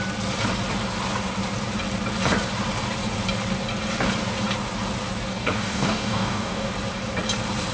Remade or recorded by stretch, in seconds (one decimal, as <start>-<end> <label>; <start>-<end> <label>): 0.0-5.3 recorded; 5.3-6.7 remade; 6.7-7.7 recorded